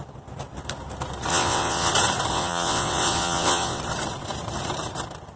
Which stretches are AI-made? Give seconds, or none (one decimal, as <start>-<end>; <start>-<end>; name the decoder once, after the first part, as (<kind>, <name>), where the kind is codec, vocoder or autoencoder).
1.3-1.9 (vocoder, WaveNeXt); 2.3-3.8